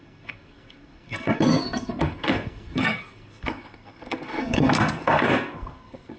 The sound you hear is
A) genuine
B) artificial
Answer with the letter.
B